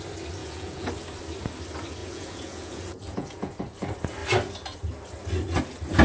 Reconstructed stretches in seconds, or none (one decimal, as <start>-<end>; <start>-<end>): 0.4-0.9; 2.0-3.6